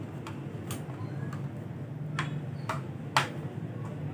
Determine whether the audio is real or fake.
real